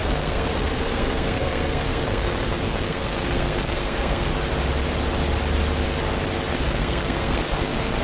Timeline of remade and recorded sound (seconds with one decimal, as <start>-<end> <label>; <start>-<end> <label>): 0.0-4.3 remade; 4.3-6.5 recorded; 6.5-8.0 remade